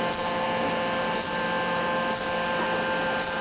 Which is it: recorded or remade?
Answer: recorded